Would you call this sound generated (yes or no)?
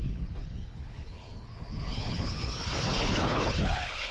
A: yes